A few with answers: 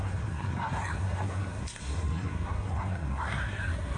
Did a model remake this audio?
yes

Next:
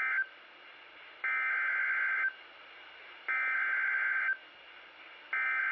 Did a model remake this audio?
no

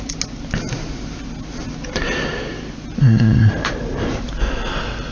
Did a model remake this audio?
no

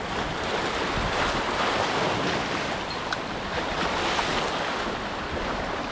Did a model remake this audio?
no